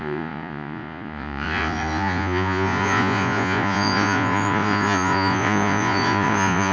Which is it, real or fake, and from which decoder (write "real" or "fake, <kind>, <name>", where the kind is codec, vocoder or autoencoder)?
fake, vocoder, Vocos